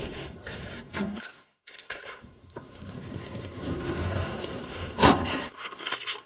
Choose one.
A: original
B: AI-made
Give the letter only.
B